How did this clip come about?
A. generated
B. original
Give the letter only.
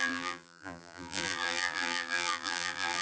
A